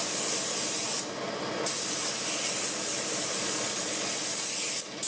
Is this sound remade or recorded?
recorded